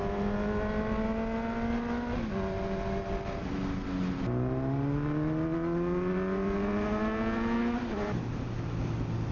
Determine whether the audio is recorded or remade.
recorded